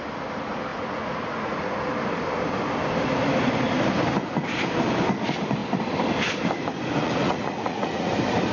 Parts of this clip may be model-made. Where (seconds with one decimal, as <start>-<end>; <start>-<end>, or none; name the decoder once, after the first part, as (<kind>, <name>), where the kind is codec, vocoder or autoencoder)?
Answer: 0.7-1.9 (vocoder, Vocos); 7.0-8.1